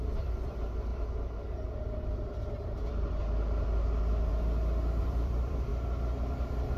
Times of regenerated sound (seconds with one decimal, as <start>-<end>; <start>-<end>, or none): 0.0-4.3; 5.0-5.7